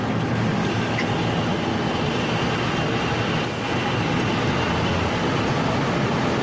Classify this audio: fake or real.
real